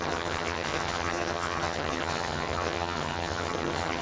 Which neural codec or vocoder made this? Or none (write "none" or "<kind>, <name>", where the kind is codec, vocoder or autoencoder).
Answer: vocoder, HiFi-GAN